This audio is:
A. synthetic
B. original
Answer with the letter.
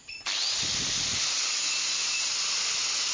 A